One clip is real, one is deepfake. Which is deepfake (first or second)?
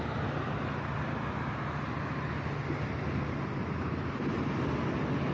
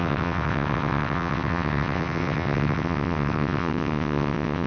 second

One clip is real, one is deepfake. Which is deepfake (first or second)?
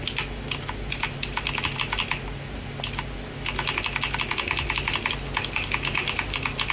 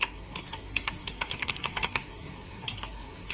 second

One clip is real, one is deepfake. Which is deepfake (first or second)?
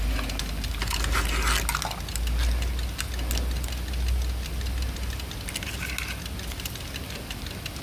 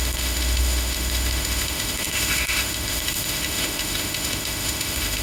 second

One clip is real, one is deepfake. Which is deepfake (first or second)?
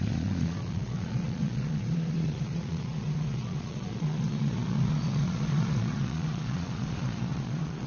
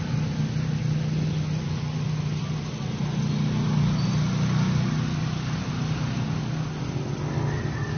first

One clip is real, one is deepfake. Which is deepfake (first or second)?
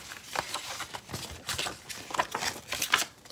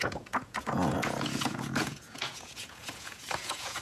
second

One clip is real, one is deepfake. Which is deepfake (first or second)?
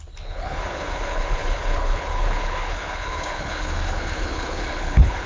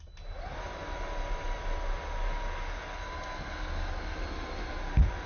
first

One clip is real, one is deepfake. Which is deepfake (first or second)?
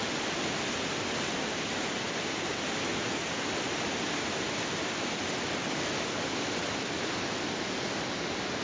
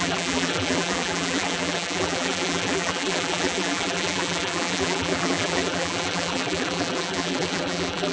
second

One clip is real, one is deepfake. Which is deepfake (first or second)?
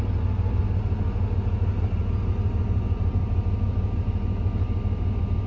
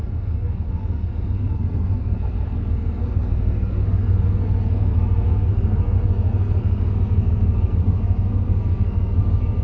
second